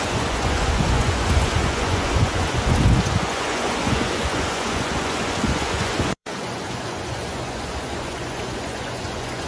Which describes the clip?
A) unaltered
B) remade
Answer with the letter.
B